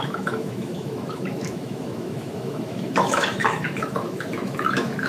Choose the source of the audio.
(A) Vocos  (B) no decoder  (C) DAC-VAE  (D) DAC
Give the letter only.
C